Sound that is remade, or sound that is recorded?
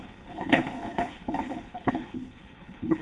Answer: remade